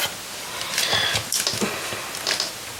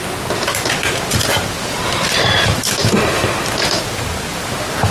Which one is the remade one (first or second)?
second